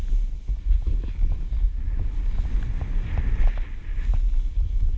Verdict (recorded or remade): recorded